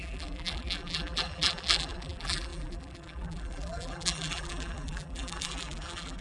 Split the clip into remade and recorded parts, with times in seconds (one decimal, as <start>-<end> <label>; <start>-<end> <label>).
0.0-6.2 remade